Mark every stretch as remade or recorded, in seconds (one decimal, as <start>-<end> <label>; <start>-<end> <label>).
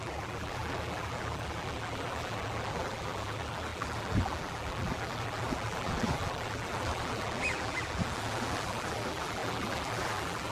0.0-10.5 remade